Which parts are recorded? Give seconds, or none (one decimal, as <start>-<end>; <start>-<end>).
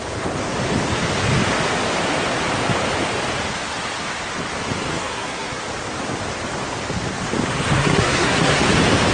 0.0-4.9; 5.6-7.8; 8.6-9.1